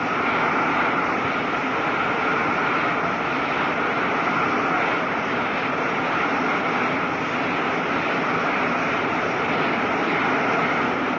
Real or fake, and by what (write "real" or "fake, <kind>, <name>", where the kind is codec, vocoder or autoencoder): real